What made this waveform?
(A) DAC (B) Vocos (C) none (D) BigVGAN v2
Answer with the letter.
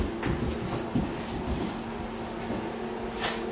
C